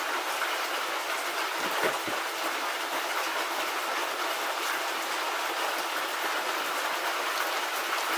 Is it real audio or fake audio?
real